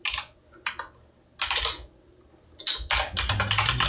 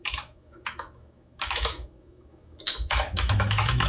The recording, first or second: first